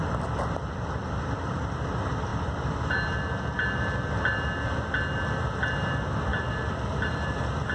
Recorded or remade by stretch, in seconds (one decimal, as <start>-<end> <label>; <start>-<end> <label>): 0.0-7.7 recorded